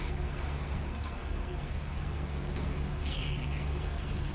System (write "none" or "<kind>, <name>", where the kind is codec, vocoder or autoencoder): codec, SNAC